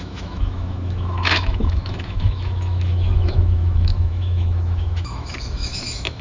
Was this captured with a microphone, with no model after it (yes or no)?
no